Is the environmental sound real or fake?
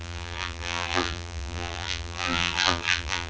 fake